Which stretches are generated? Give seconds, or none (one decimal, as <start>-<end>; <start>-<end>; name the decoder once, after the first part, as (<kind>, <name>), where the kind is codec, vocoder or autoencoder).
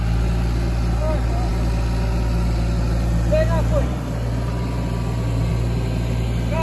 none